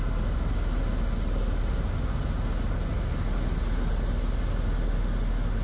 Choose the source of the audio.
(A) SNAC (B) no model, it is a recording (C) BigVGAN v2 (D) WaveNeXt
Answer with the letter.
B